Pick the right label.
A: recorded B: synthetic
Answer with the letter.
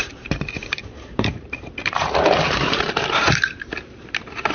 B